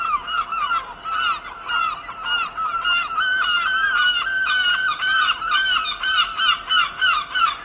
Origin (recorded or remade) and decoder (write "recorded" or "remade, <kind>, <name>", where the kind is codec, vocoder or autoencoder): recorded